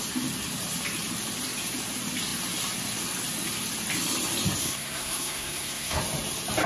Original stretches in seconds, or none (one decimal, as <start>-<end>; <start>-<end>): 0.0-4.6; 6.0-6.7